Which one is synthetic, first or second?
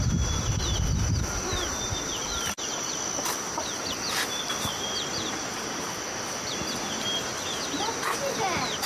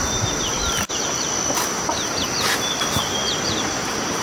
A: second